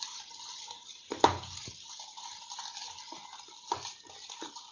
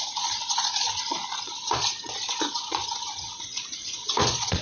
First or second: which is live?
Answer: first